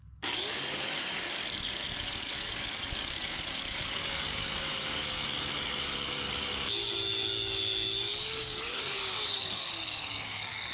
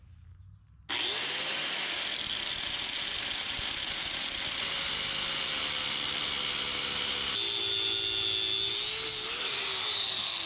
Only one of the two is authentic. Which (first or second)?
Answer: second